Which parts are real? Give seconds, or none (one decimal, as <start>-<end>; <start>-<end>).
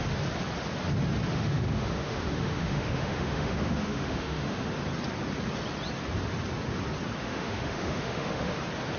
0.0-1.3; 4.7-7.2; 8.6-9.0